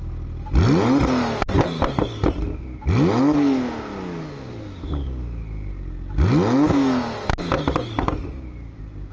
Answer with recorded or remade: recorded